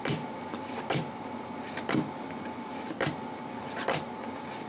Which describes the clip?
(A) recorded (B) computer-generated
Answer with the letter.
A